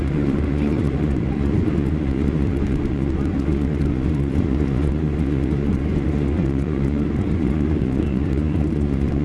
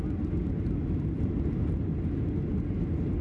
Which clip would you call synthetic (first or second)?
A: first